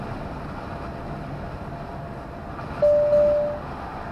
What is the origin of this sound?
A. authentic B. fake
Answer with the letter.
A